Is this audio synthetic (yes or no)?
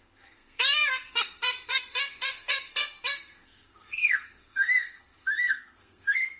yes